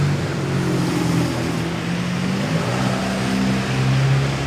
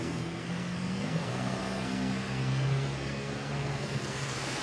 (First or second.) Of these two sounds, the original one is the first